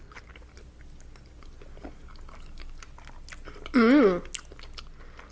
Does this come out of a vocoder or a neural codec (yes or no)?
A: no